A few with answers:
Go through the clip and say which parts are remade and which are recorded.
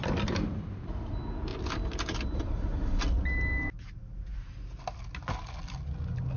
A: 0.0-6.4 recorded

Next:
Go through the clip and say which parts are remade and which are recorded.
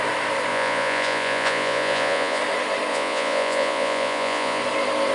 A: 0.0-0.5 recorded; 0.5-2.4 remade; 2.4-2.9 recorded; 2.9-4.6 remade; 4.6-5.1 recorded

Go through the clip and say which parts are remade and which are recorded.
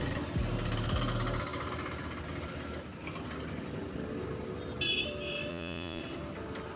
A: 0.0-5.5 recorded; 5.5-6.0 remade; 6.0-6.8 recorded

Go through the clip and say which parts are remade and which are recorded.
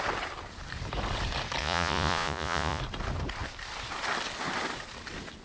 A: 0.0-1.6 recorded; 1.6-2.8 remade; 2.8-5.4 recorded